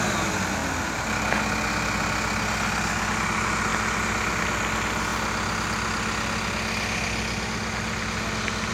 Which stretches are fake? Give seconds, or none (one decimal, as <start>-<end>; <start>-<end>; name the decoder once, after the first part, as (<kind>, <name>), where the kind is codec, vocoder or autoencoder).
none